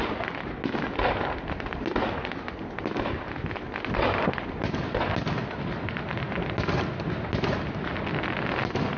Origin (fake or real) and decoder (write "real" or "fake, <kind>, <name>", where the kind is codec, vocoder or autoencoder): real